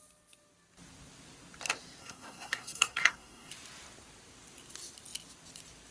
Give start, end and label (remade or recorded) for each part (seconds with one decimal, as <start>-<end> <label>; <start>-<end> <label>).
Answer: 0.0-2.0 recorded; 2.0-3.5 remade; 3.5-5.9 recorded